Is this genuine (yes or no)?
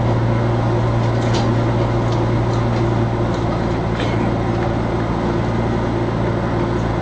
yes